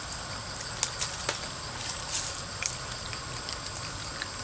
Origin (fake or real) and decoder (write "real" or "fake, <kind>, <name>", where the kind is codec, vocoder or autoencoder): real